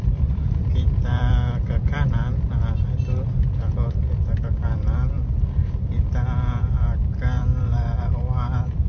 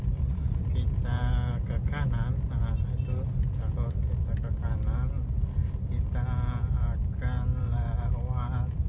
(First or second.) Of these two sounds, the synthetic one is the first